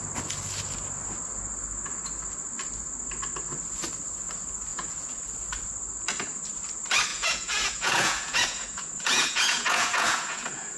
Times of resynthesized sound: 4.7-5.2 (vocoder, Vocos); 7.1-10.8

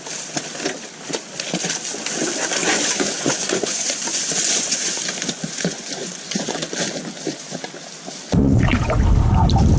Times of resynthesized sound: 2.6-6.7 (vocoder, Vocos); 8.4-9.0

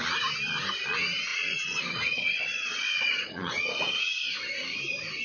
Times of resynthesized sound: 1.3-4.3 (vocoder, Vocos)

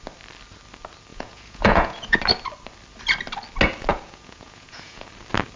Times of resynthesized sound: 1.1-2.2 (vocoder, Vocos); 3.9-5.1

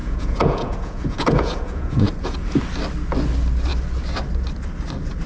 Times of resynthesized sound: 0.0-2.6 (vocoder, Vocos)

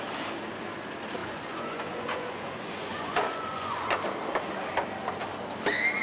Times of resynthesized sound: 1.2-4.0 (vocoder, Vocos)